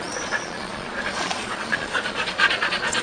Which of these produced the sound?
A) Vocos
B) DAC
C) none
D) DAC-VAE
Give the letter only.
A